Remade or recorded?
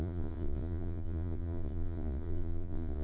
remade